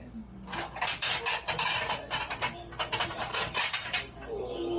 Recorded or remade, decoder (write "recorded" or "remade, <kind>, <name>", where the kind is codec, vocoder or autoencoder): recorded